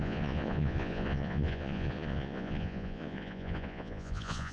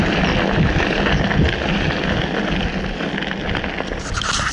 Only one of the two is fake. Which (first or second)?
first